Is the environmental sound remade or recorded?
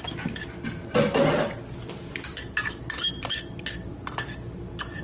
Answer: recorded